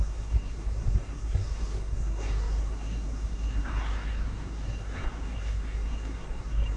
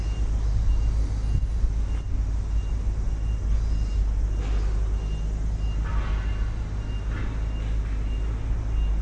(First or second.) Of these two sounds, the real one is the second